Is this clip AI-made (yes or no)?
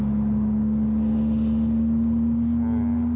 no